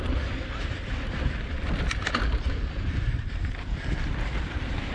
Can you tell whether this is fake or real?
real